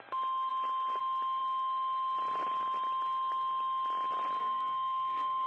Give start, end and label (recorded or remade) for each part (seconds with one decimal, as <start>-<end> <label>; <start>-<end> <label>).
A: 0.0-4.4 recorded; 4.4-5.5 remade